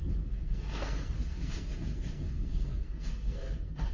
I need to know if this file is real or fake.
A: fake